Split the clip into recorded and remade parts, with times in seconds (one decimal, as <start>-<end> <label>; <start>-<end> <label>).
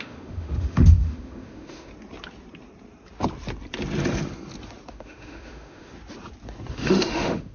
0.0-1.9 remade; 1.9-4.9 recorded; 4.9-5.9 remade; 5.9-6.7 recorded; 6.7-7.5 remade